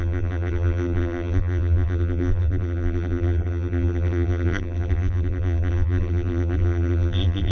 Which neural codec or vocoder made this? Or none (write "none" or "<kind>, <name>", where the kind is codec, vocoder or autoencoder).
vocoder, BigVGAN v2